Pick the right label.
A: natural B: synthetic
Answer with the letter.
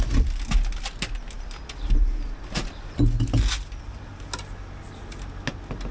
A